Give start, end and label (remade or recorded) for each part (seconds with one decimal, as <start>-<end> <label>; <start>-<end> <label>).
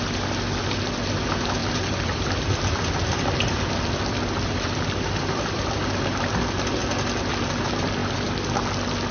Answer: 0.0-1.6 recorded; 1.6-5.9 remade; 5.9-6.8 recorded; 6.8-7.3 remade; 7.3-9.1 recorded